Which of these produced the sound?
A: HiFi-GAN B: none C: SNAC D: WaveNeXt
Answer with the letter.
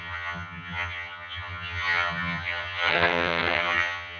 A